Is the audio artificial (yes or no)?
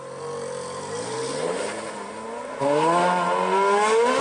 no